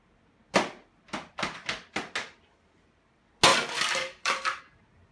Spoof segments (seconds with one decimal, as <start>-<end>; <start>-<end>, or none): 3.5-4.6